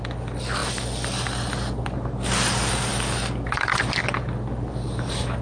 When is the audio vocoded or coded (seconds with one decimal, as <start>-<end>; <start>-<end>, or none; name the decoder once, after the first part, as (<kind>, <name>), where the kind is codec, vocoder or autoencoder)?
none